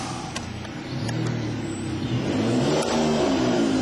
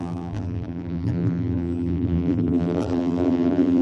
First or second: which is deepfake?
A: second